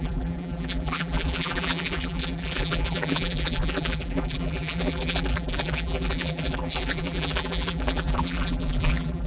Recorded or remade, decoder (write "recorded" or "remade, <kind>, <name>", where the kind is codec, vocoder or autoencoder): remade, vocoder, BigVGAN v2